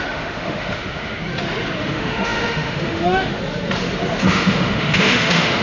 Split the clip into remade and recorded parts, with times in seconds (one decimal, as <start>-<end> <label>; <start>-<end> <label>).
0.0-1.2 remade; 1.2-1.8 recorded; 1.8-3.4 remade; 3.4-4.3 recorded; 4.3-5.6 remade